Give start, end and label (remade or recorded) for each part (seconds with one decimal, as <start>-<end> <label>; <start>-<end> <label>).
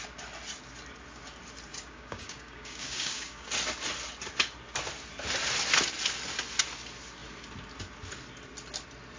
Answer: 0.0-1.7 recorded; 1.7-3.5 remade; 3.5-9.2 recorded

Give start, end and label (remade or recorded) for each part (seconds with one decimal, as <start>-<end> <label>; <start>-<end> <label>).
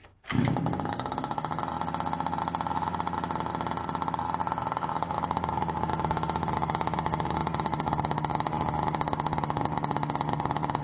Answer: 0.0-1.6 remade; 1.6-4.6 recorded; 4.6-10.8 remade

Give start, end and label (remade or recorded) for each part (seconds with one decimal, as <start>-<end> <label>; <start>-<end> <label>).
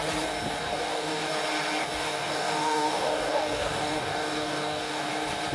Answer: 0.0-0.6 recorded; 0.6-1.3 remade; 1.3-1.8 recorded; 1.8-5.1 remade; 5.1-5.5 recorded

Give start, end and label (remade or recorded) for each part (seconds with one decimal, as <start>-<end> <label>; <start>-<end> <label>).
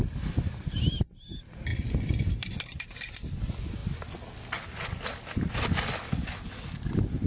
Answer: 0.0-7.3 recorded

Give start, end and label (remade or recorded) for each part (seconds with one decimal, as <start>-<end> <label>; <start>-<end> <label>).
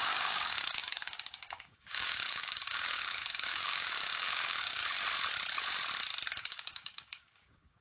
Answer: 0.0-4.8 remade; 4.8-6.4 recorded; 6.4-7.8 remade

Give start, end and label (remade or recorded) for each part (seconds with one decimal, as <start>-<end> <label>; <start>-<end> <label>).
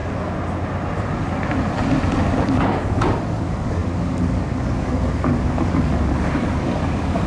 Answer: 0.0-2.4 recorded; 2.4-7.3 remade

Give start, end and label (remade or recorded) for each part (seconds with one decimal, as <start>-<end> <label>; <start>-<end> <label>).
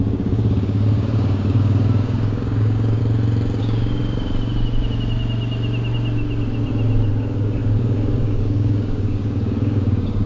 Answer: 0.0-3.0 remade; 3.0-3.6 recorded; 3.6-4.0 remade; 4.0-7.1 recorded; 7.1-10.3 remade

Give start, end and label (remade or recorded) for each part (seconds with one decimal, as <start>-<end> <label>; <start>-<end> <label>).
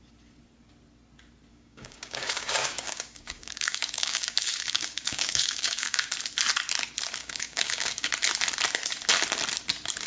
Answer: 0.0-1.5 recorded; 1.5-6.1 remade; 6.1-7.2 recorded; 7.2-8.1 remade; 8.1-10.1 recorded